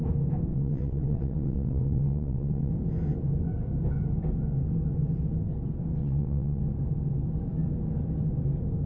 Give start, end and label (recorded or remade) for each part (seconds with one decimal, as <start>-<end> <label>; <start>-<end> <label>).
0.0-0.5 recorded; 0.5-2.7 remade; 2.7-6.0 recorded; 6.0-6.6 remade; 6.6-8.9 recorded